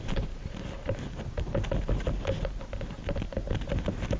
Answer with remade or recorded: recorded